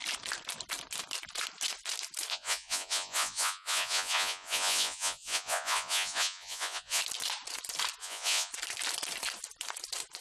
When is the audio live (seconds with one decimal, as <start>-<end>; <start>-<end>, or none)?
0.0-2.3; 7.0-8.0; 8.5-10.2